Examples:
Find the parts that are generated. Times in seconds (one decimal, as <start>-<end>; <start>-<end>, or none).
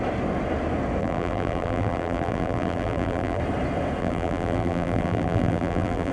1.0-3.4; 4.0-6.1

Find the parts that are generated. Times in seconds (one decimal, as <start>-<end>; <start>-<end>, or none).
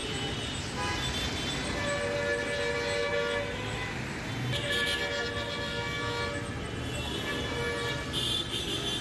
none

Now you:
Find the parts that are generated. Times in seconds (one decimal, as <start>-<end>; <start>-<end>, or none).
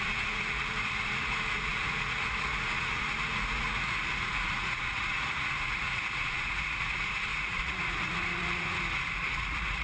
0.0-9.8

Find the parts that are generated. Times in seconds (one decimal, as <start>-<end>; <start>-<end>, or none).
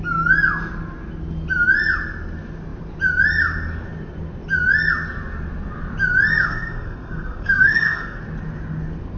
6.5-8.2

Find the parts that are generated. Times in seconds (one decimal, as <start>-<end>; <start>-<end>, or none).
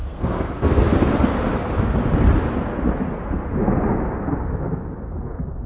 0.0-0.8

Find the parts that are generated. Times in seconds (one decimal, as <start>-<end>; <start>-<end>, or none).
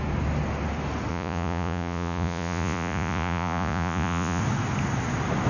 1.1-4.4